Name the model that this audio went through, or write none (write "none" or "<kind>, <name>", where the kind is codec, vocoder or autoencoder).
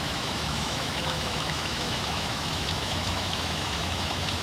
autoencoder, DAC-VAE